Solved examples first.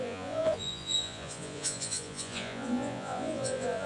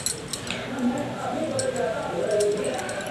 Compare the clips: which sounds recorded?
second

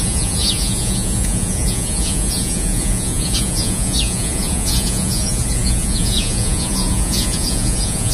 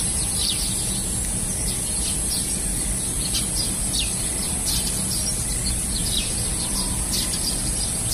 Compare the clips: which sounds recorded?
second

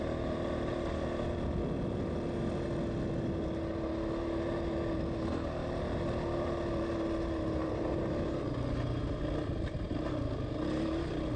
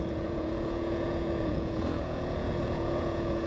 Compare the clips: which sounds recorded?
first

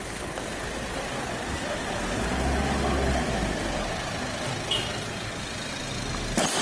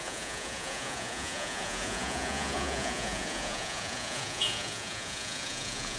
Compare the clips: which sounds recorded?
first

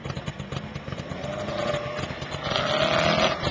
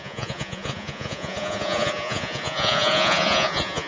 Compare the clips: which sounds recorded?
first